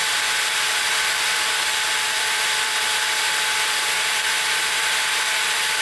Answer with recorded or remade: remade